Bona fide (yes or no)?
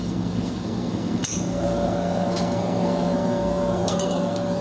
no